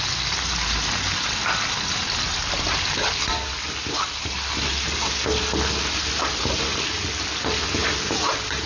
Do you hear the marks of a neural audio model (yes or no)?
no